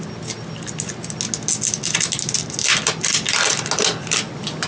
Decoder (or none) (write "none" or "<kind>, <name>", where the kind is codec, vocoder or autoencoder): none